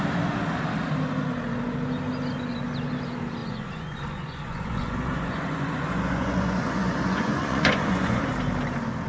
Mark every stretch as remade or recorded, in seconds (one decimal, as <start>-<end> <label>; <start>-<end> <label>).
0.0-3.4 recorded; 3.4-8.2 remade; 8.2-9.1 recorded